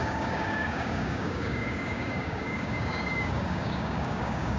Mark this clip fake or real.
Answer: fake